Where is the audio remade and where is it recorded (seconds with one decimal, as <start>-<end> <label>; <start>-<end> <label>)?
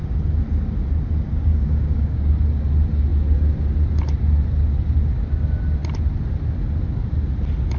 0.0-1.5 recorded; 1.5-2.3 remade; 2.3-7.8 recorded